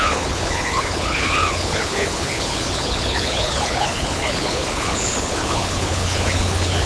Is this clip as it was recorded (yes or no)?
no